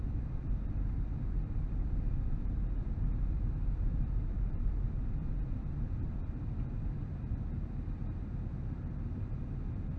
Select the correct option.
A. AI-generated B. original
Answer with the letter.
A